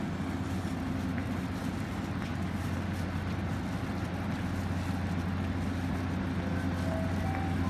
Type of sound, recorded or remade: recorded